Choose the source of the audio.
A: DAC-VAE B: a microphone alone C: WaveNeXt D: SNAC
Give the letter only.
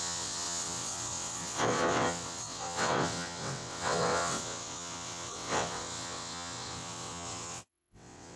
C